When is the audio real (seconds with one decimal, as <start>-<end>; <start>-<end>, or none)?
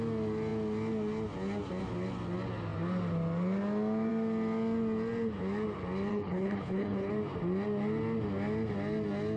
0.0-6.1; 7.1-9.4